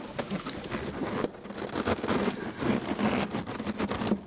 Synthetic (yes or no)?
no